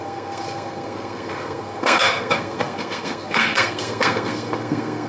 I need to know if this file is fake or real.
fake